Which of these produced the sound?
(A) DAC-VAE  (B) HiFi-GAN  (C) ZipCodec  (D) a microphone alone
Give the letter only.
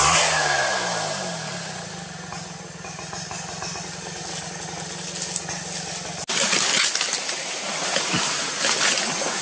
D